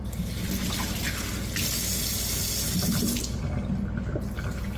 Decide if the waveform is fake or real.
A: real